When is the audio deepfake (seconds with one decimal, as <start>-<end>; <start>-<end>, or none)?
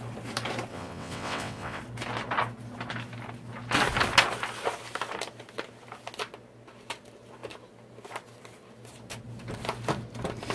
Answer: 0.7-1.8